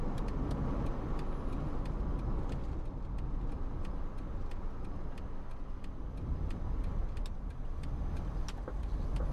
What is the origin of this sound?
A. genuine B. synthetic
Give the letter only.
A